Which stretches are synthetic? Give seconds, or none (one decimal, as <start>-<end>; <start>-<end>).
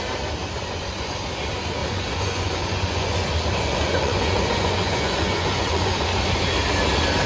0.4-1.2; 1.8-6.2